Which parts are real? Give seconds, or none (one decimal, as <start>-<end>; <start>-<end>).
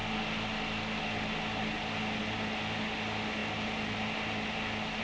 0.0-5.0